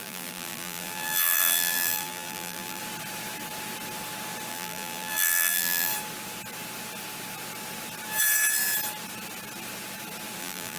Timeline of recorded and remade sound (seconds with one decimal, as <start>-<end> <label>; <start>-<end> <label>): 0.0-2.8 remade; 2.8-4.5 recorded; 4.5-5.9 remade; 5.9-10.4 recorded; 10.4-10.8 remade